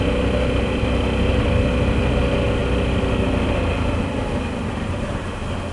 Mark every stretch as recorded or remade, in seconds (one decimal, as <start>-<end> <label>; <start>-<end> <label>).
0.0-5.7 recorded